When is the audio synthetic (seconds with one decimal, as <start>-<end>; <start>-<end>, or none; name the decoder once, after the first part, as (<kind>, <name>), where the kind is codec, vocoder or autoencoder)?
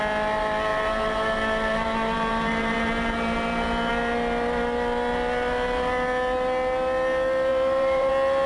0.7-3.9 (vocoder, BigVGAN v2); 7.5-8.1